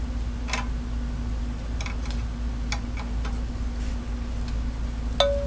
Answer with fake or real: real